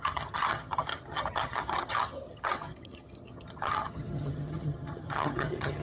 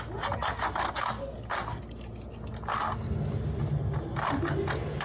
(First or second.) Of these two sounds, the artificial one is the first